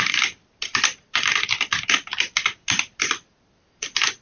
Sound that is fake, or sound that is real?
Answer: real